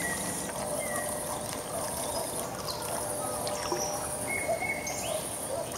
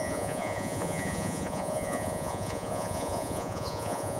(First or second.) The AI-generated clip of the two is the second